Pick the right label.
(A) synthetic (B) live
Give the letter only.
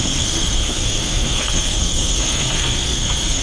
A